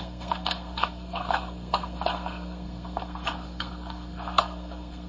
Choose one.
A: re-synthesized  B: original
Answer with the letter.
A